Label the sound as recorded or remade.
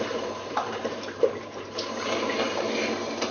remade